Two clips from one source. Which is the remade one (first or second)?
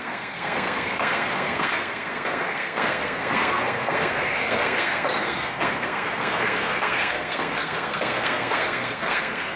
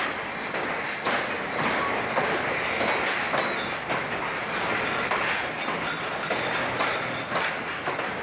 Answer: first